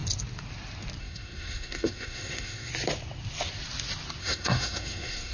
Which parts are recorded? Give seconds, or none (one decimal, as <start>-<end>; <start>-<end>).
0.0-1.0; 2.7-4.2